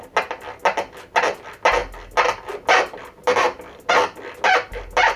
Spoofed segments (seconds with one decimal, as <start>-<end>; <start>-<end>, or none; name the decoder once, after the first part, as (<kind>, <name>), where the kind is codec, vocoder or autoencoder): none